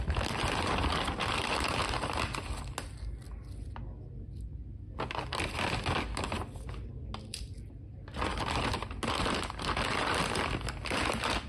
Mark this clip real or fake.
real